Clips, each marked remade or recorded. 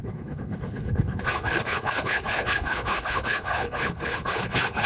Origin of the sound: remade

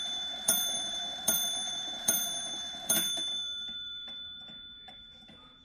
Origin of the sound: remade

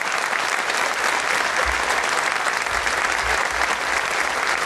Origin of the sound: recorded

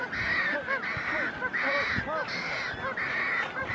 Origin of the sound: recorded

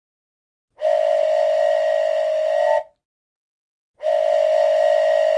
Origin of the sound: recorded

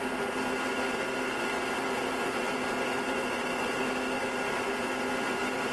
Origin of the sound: recorded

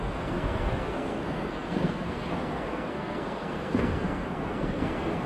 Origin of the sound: remade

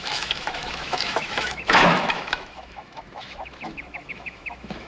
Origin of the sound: remade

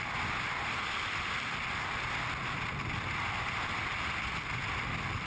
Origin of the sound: recorded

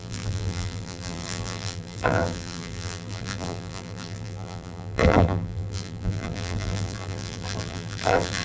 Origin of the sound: remade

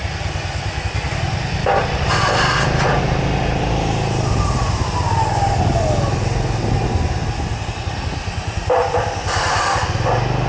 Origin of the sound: recorded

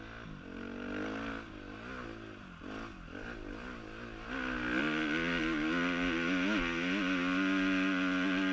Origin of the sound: recorded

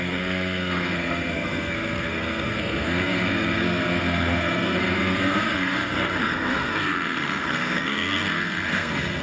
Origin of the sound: remade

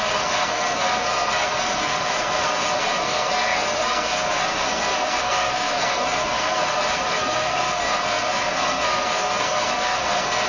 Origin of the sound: remade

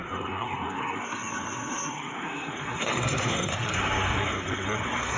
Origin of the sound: remade